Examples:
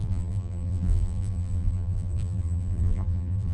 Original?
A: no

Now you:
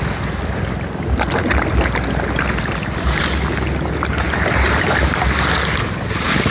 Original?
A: yes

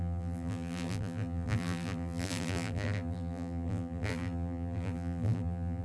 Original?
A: no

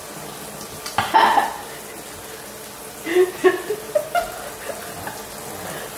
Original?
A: yes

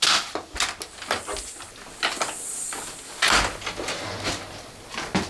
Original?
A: yes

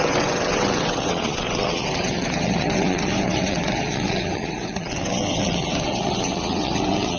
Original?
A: no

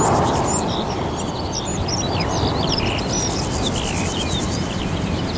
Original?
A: yes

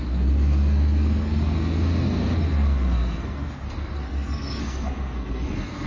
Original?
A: no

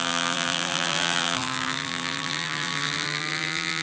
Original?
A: no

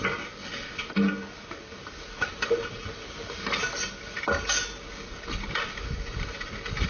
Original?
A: yes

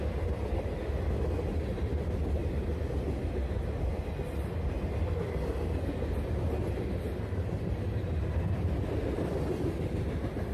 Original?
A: yes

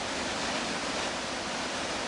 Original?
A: yes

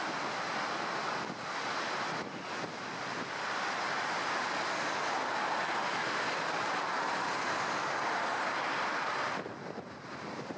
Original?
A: yes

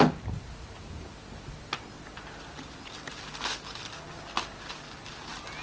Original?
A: yes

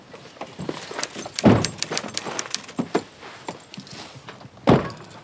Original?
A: yes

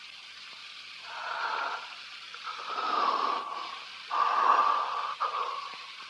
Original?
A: yes